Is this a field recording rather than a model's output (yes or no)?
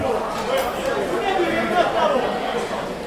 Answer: yes